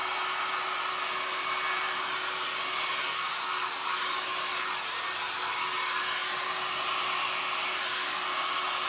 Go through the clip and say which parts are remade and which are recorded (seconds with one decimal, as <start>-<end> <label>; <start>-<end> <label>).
0.0-8.9 recorded